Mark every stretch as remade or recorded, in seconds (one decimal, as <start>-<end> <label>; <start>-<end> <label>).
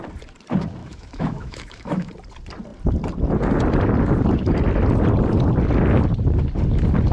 0.0-0.8 recorded; 0.8-2.1 remade; 2.1-7.1 recorded